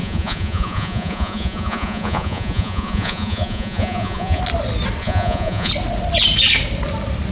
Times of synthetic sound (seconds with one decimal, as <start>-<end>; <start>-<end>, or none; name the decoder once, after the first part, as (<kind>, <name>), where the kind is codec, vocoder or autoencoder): 0.0-4.4 (vocoder, Vocos); 5.0-5.7